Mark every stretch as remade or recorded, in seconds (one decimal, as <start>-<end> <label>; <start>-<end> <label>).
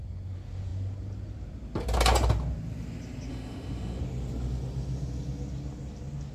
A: 0.0-3.3 recorded; 3.3-4.0 remade; 4.0-6.3 recorded